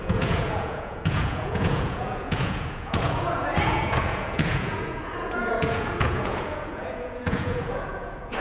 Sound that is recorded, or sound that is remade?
remade